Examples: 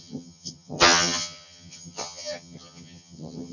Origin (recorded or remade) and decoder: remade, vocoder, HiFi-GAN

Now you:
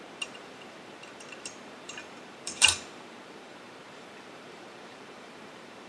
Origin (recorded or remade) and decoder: remade, vocoder, BigVGAN v2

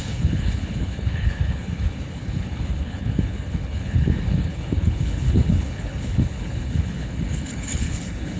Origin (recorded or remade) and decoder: remade, codec, HILCodec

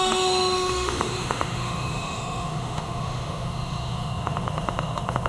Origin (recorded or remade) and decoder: remade, autoencoder, DAC-VAE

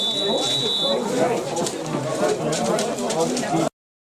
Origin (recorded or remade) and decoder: recorded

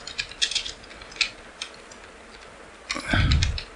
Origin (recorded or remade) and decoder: recorded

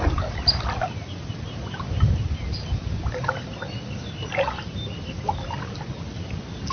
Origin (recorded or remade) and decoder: recorded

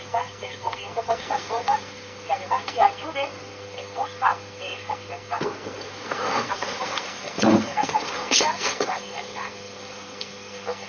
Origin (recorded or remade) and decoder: remade, codec, SNAC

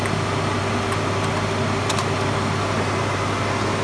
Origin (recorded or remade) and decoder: recorded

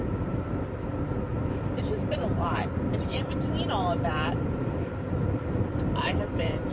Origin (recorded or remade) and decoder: remade, vocoder, BigVGAN v2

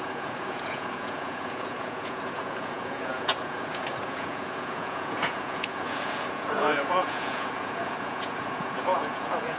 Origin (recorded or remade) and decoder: remade, vocoder, Vocos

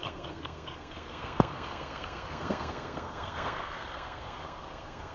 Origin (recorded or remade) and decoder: remade, codec, SNAC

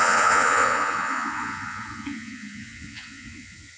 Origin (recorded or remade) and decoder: remade, vocoder, Vocos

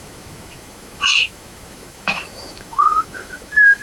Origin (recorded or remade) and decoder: remade, autoencoder, DAC-VAE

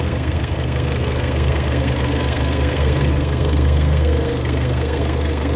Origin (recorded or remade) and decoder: remade, codec, SNAC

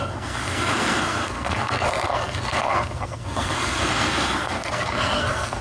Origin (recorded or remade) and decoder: remade, codec, SNAC